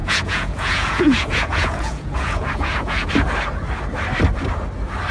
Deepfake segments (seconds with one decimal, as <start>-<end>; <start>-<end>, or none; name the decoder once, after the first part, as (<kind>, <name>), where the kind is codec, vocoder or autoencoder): 0.0-3.1 (vocoder, Vocos)